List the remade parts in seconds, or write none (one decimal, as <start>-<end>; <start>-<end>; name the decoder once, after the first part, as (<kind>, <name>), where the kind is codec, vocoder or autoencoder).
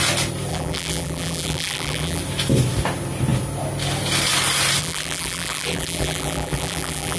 0.5-2.2 (vocoder, BigVGAN v2); 4.8-7.2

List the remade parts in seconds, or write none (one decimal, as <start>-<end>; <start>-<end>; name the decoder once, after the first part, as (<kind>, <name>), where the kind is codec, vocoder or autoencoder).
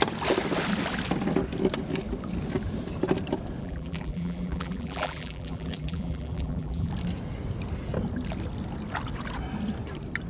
3.6-6.9 (vocoder, BigVGAN v2)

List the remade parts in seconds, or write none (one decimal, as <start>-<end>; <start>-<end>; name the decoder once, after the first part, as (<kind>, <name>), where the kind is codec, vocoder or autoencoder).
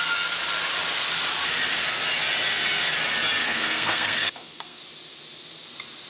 3.4-4.8 (codec, SNAC)